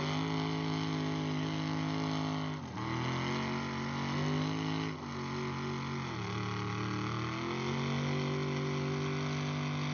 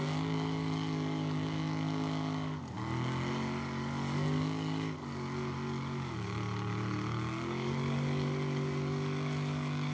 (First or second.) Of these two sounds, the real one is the first